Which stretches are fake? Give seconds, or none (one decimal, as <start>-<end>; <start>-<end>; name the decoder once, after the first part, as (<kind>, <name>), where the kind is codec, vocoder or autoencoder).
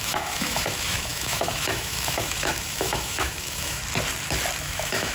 0.0-3.8 (autoencoder, DAC-VAE); 4.6-5.1